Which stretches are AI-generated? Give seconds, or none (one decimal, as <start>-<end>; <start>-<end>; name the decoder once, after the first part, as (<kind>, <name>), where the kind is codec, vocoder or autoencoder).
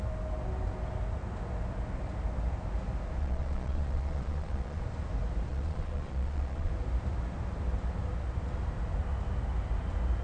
3.2-4.8 (vocoder, Vocos); 5.5-6.7